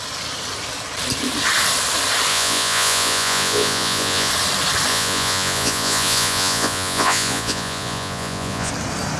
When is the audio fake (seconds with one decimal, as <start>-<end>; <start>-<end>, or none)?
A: 2.3-4.3; 4.9-8.7